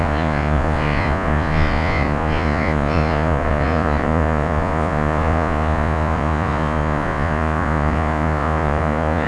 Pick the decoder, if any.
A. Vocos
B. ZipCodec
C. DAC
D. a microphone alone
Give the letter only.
A